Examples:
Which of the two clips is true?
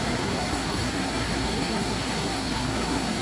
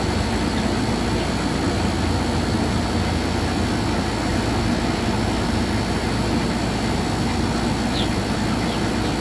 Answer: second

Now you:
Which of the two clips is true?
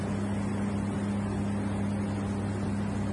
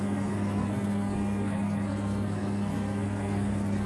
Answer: first